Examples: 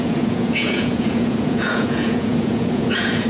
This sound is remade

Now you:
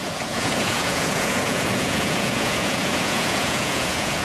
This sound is remade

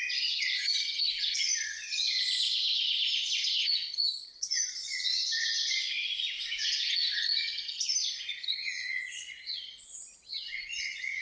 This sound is remade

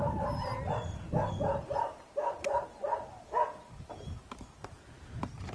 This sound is recorded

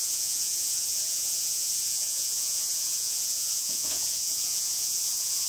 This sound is remade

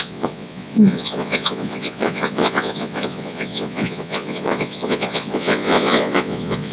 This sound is remade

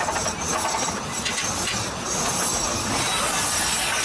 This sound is recorded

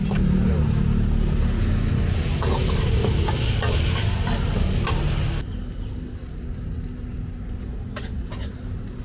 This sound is recorded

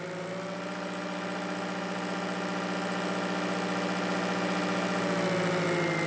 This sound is recorded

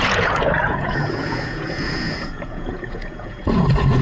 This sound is remade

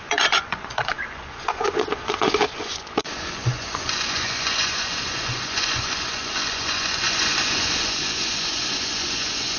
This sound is remade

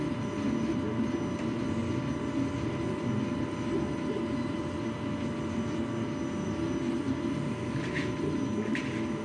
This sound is recorded